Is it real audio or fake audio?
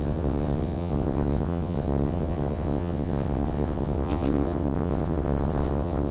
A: fake